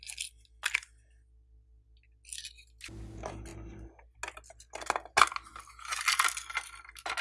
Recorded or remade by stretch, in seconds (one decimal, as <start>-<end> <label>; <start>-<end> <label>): 0.0-7.2 recorded